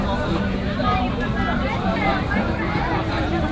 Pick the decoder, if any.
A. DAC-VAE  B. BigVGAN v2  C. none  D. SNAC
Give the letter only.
B